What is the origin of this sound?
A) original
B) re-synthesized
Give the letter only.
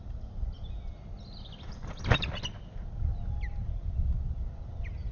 A